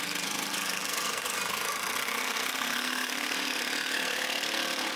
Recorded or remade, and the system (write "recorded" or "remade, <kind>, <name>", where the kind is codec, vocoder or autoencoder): remade, codec, SNAC